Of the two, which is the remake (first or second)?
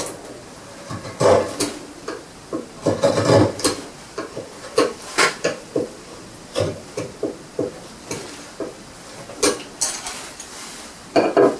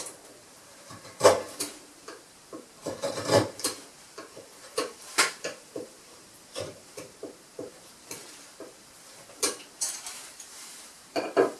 second